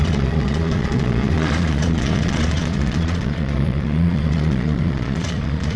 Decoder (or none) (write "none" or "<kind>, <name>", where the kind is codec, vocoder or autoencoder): vocoder, Vocos